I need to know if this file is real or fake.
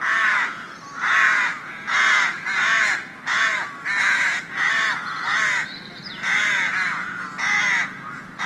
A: fake